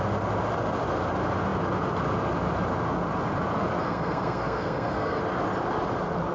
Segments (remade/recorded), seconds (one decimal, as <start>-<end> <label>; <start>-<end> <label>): 0.0-3.8 recorded; 3.8-5.2 remade; 5.2-6.3 recorded